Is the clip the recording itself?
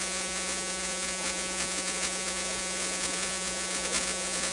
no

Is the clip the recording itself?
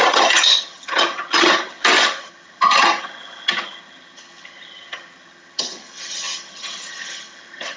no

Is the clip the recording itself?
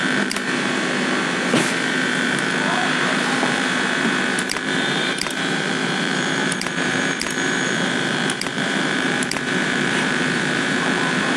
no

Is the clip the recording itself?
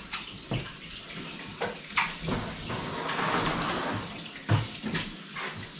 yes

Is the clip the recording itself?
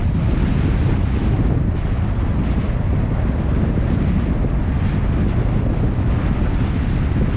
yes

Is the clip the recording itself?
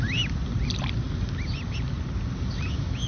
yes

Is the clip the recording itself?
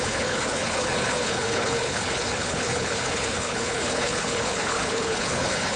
no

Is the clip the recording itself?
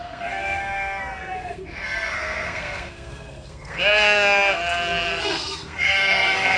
no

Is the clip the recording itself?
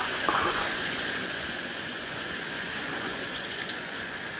no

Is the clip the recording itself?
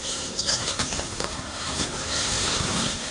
no